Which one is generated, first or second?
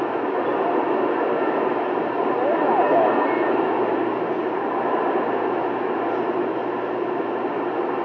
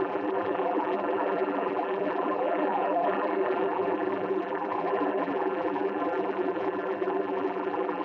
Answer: second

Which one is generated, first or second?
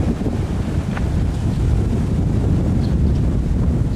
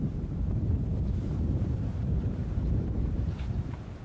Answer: second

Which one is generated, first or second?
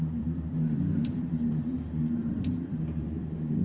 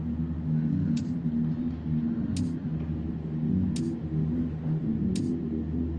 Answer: first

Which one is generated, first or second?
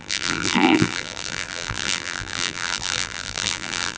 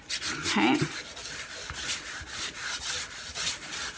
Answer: first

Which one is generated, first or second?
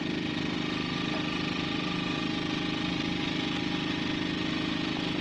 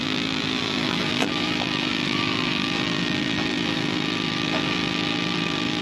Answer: second